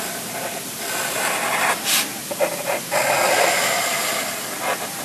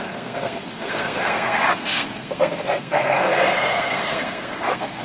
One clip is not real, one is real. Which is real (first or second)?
first